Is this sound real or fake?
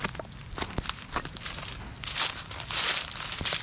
real